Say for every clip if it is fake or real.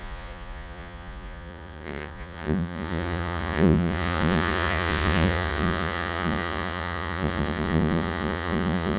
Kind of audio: fake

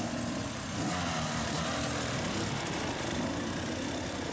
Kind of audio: real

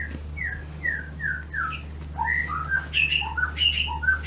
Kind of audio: real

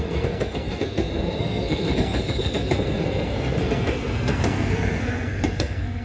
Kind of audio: fake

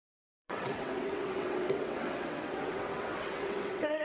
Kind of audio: fake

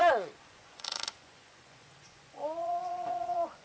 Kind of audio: fake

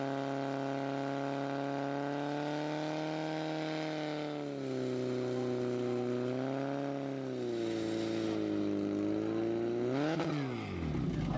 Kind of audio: real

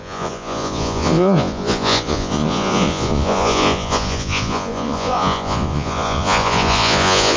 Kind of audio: fake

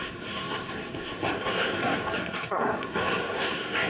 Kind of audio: fake